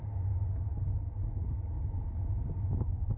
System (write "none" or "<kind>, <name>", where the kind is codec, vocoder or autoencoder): none